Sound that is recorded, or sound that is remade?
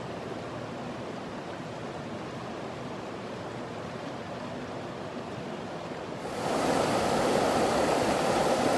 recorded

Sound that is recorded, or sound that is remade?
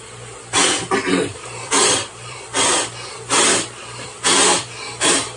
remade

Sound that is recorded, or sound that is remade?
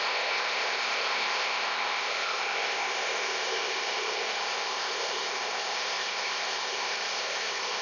remade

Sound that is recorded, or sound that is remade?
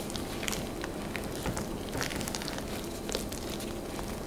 recorded